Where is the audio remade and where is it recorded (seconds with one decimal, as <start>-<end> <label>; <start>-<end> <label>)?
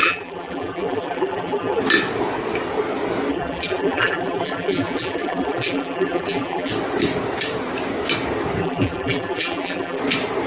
0.0-1.8 remade; 1.8-3.3 recorded; 3.3-6.7 remade; 6.7-8.6 recorded; 8.6-10.0 remade; 10.0-10.5 recorded